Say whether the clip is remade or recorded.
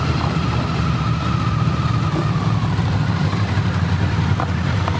recorded